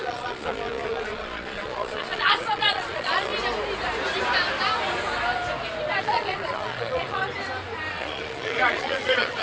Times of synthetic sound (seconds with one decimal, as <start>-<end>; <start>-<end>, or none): 0.0-3.3; 6.0-7.2; 7.9-9.4